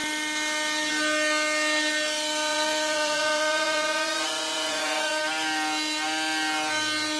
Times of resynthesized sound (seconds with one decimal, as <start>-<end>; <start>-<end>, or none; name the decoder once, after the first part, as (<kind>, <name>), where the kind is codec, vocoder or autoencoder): 2.5-5.2 (vocoder, Vocos)